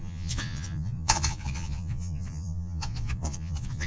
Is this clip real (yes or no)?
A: no